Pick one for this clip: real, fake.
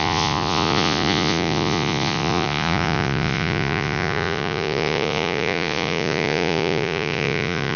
fake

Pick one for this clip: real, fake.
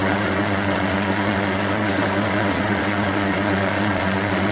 fake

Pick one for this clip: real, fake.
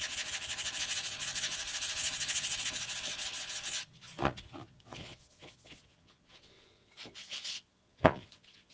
fake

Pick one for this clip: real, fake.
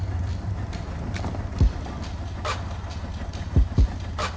real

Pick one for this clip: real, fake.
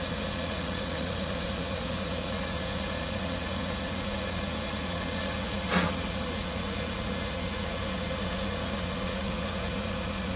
fake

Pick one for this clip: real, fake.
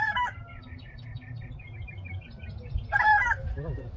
real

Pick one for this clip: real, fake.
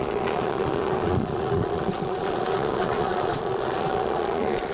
fake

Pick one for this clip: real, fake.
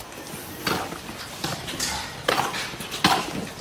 real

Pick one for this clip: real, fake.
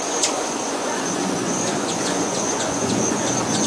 fake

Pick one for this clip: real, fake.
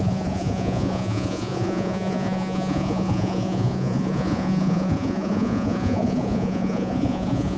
fake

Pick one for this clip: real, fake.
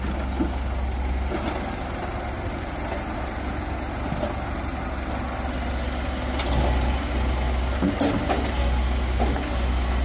real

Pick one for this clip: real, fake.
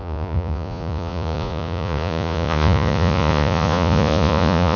fake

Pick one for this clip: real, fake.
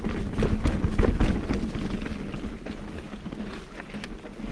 real